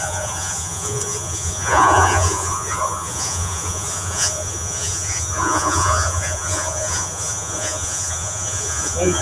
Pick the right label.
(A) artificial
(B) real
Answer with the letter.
A